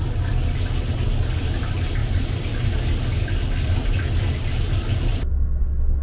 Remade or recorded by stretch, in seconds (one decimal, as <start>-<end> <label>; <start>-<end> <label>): 0.0-6.0 recorded